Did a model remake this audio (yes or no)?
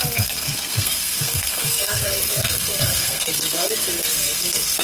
yes